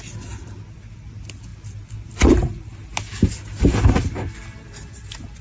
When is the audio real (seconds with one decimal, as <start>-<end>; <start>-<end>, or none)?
0.0-5.4